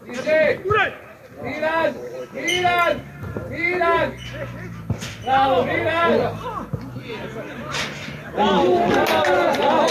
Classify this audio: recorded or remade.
recorded